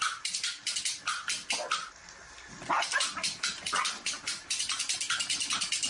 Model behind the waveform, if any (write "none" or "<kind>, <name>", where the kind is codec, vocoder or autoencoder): none